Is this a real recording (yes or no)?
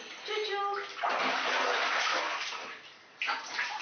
yes